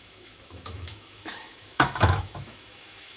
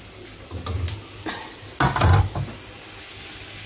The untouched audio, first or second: second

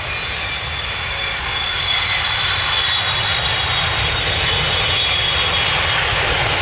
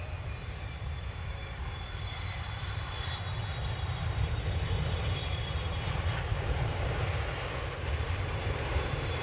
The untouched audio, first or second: first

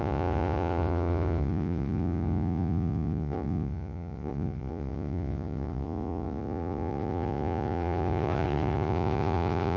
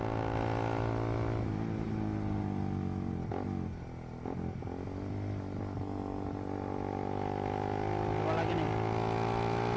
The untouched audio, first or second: second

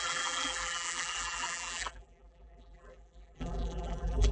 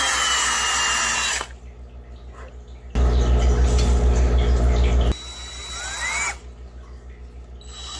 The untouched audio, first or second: second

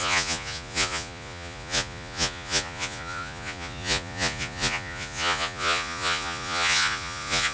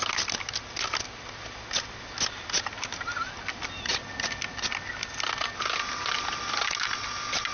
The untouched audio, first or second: second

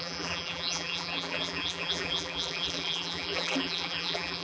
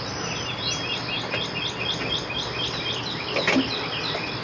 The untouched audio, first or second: second